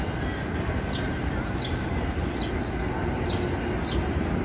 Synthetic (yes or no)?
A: no